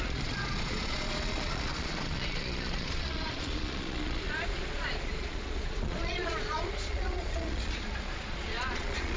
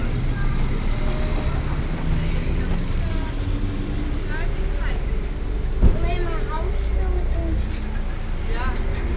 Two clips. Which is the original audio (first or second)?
second